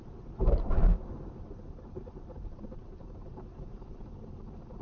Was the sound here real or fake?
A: real